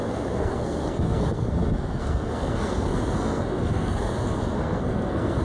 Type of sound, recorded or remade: remade